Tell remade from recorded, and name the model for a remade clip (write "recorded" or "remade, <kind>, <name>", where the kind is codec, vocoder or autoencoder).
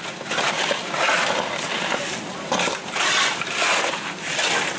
recorded